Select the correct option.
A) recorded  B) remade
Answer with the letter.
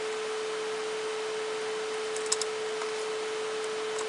A